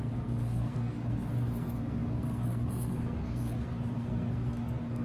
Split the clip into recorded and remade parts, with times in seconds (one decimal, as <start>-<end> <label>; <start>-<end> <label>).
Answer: 0.0-5.0 remade